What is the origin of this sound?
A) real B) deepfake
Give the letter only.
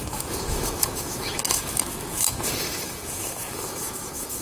B